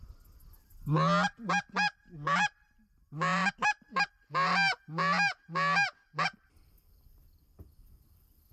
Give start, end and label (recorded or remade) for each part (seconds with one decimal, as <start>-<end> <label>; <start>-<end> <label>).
0.0-8.5 recorded